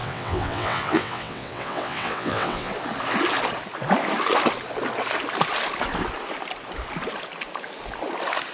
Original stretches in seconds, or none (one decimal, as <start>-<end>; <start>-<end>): 2.7-8.5